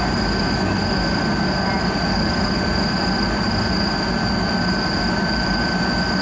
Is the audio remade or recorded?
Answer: recorded